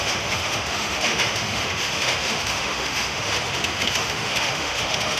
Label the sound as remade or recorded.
remade